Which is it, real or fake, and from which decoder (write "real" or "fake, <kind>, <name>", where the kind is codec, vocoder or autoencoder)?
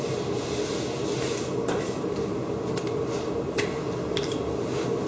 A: real